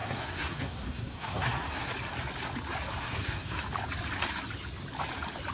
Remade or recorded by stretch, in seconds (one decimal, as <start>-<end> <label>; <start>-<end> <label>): 0.0-1.9 remade; 1.9-3.0 recorded; 3.0-3.6 remade; 3.6-5.5 recorded